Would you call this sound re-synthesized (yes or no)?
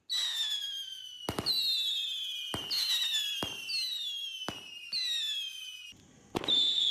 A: no